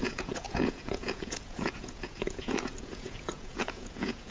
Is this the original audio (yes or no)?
no